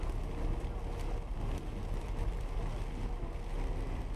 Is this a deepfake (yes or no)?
no